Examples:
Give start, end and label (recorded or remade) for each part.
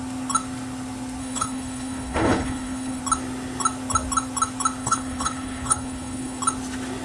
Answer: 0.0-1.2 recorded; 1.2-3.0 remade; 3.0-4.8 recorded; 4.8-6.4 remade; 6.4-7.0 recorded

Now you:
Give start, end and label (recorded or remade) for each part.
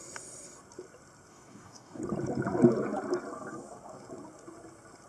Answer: 0.0-1.3 recorded; 1.3-2.0 remade; 2.0-5.1 recorded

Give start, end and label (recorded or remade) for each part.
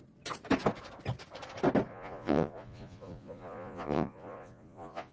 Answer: 0.0-1.9 recorded; 1.9-5.1 remade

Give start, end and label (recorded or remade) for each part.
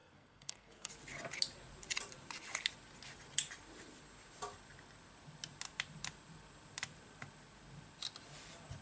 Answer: 0.0-0.9 remade; 0.9-8.8 recorded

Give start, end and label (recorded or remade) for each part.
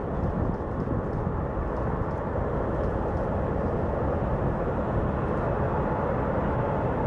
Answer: 0.0-7.1 recorded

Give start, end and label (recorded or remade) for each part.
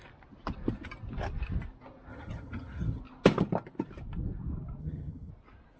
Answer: 0.0-2.1 recorded; 2.1-3.0 remade; 3.0-4.8 recorded; 4.8-5.3 remade; 5.3-5.8 recorded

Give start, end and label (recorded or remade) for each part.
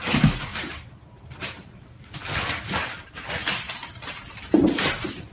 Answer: 0.0-5.3 recorded